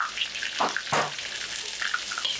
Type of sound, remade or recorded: recorded